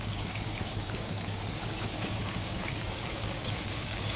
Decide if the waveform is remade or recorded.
remade